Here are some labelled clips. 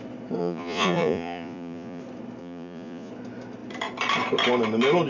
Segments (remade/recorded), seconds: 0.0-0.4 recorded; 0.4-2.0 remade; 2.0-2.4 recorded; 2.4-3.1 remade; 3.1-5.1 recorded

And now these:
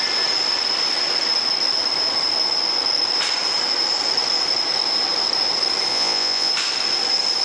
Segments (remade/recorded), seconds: 0.0-5.9 recorded; 5.9-6.5 remade; 6.5-7.4 recorded